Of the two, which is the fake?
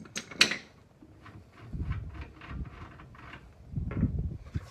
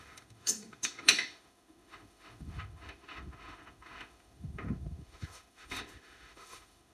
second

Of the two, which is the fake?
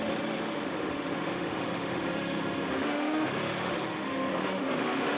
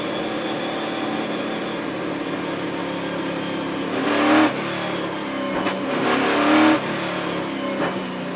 first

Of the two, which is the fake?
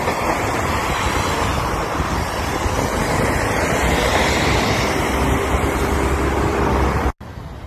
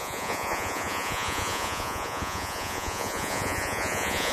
second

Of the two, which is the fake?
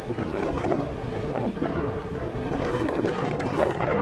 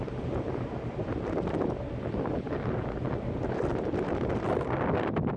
first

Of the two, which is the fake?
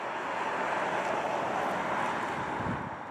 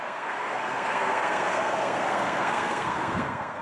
second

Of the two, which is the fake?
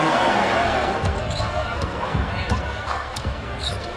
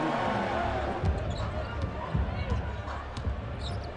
first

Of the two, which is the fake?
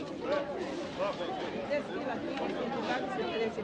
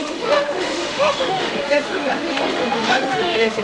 second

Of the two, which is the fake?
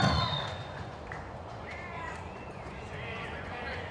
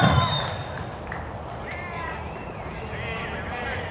first